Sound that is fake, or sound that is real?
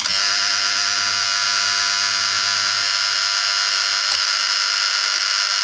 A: real